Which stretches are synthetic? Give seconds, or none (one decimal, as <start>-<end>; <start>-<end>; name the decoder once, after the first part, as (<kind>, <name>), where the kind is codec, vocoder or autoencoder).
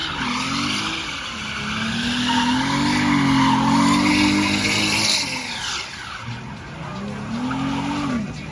none